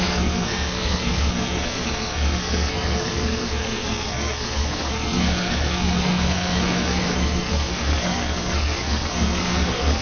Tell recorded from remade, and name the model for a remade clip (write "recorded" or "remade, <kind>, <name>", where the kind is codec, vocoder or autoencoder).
remade, codec, SNAC